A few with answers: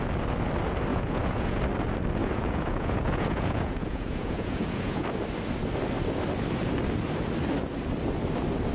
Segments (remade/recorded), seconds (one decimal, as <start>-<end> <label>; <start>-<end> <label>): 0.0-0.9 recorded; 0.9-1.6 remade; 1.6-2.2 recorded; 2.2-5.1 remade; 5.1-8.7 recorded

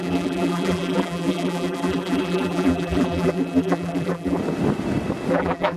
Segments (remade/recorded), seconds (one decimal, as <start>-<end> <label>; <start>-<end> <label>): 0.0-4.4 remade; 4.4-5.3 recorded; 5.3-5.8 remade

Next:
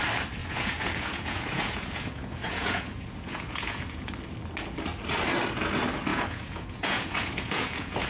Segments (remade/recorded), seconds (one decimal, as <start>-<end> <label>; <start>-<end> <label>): 0.0-0.4 recorded; 0.4-4.1 remade; 4.1-6.1 recorded; 6.1-8.1 remade

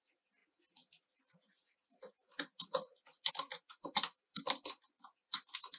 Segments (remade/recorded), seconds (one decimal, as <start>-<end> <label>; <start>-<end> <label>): 0.0-5.8 recorded